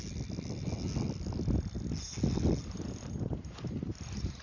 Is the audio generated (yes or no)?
no